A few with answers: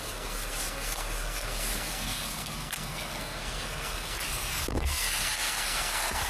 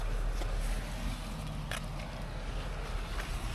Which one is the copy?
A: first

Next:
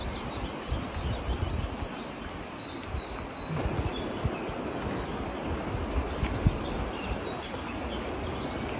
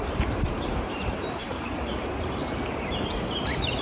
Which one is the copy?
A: second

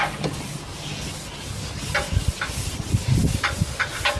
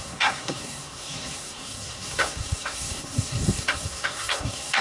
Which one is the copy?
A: second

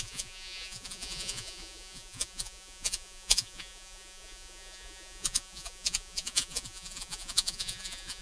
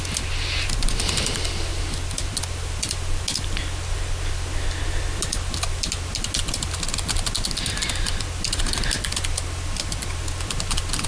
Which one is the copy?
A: first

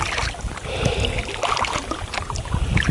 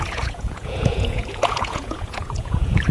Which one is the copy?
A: second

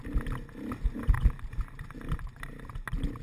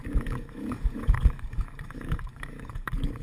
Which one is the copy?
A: second